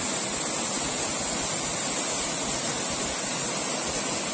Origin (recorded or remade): recorded